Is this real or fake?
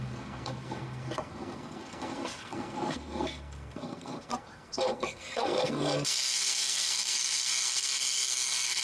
fake